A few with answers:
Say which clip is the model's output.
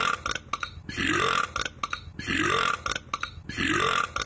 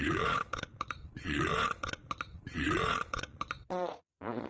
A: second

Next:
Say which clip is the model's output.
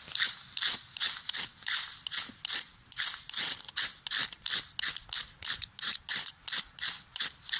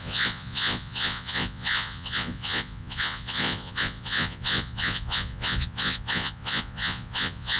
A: second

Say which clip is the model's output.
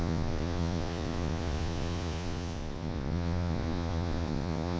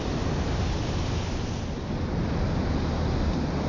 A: first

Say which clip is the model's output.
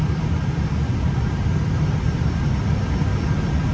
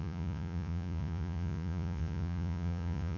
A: second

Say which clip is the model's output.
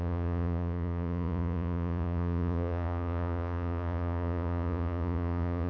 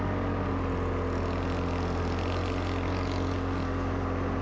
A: first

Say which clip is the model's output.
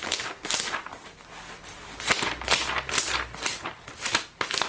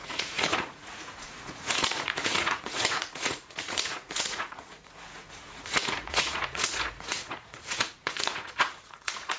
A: second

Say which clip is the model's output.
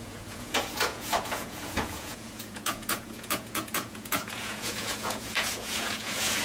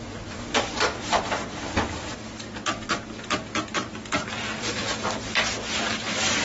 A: first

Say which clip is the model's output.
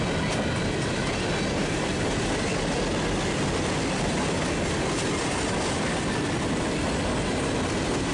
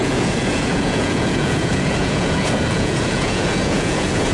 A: second